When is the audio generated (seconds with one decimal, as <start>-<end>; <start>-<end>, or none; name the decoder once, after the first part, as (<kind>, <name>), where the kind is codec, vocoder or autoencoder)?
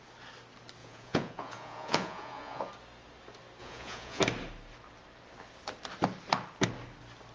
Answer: 0.8-2.7 (vocoder, Vocos); 3.6-4.2